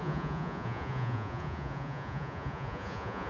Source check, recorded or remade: remade